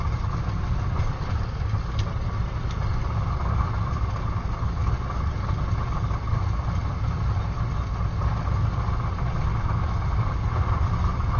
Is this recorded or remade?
recorded